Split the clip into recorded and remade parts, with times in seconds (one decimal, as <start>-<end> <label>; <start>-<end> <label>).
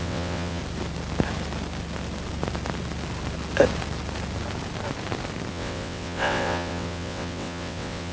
0.0-0.6 remade; 0.6-5.5 recorded; 5.5-8.1 remade